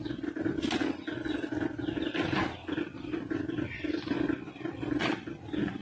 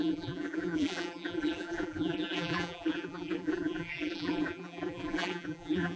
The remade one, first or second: second